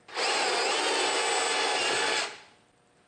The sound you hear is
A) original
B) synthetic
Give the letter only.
A